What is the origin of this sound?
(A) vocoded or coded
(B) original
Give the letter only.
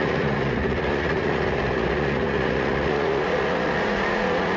A